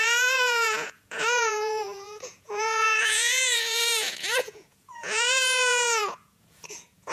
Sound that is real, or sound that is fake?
fake